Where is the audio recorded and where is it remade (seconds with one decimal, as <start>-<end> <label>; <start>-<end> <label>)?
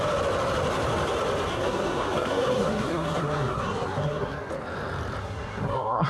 0.0-1.5 recorded; 1.5-4.5 remade; 4.5-5.2 recorded; 5.2-6.1 remade